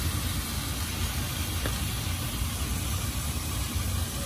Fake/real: real